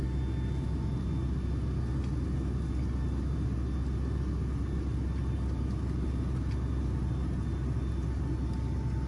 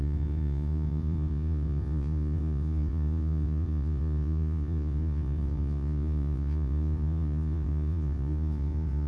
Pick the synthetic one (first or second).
second